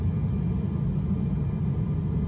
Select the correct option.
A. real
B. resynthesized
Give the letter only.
A